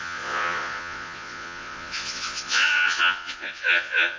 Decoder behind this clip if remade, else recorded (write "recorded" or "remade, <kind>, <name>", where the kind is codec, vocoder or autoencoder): remade, vocoder, Vocos